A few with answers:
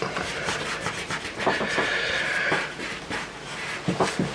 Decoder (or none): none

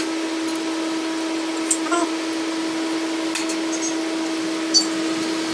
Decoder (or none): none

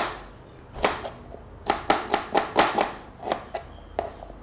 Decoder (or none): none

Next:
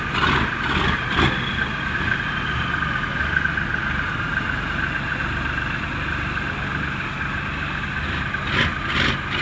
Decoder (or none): none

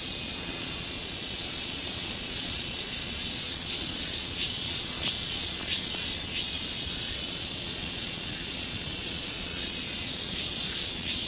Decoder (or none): vocoder, Vocos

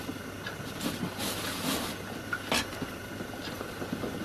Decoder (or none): none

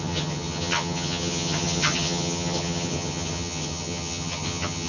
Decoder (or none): vocoder, HiFi-GAN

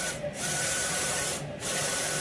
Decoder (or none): vocoder, BigVGAN v2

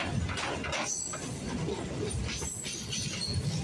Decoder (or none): none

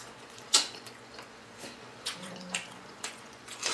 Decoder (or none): vocoder, Vocos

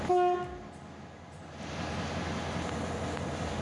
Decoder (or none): none